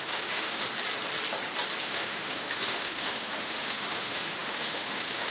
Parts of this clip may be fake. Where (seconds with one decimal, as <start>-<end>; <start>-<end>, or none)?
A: 0.0-0.6; 1.8-5.3